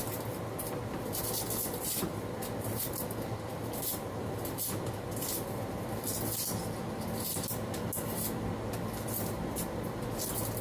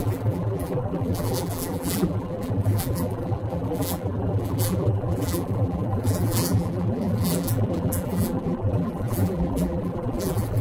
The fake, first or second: second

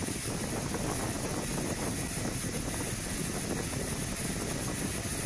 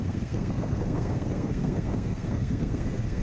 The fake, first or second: second